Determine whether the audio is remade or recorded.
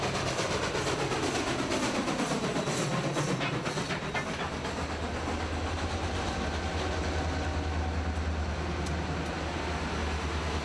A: recorded